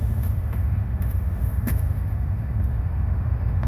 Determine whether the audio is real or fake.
fake